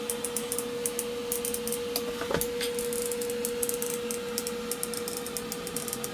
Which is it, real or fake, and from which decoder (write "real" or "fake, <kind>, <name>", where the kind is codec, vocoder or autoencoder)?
real